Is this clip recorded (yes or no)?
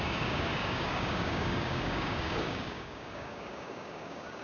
no